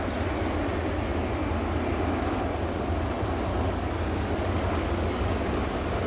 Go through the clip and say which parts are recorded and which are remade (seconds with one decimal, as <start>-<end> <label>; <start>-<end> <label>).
0.0-3.5 recorded; 3.5-5.6 remade; 5.6-6.1 recorded